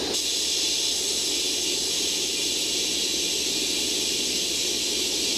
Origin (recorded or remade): recorded